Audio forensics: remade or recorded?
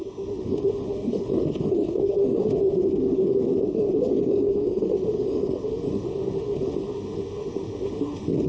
remade